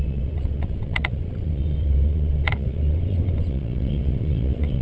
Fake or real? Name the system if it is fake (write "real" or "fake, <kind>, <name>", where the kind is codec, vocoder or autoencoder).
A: fake, vocoder, WaveNeXt